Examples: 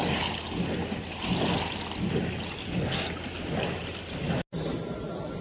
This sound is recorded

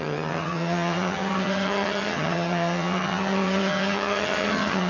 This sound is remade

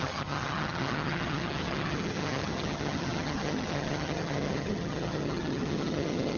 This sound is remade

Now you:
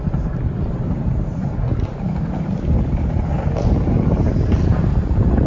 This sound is recorded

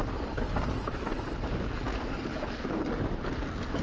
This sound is recorded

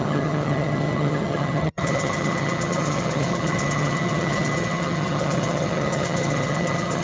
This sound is remade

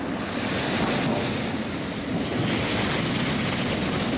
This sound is recorded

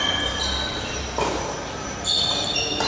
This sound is recorded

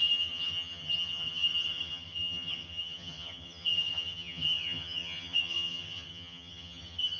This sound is remade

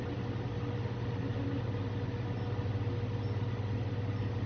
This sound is recorded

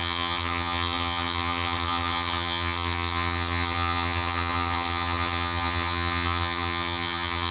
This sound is remade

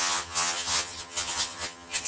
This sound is remade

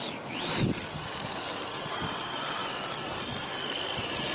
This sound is recorded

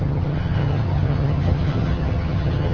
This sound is remade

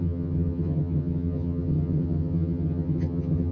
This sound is remade